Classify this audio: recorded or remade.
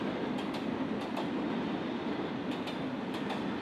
recorded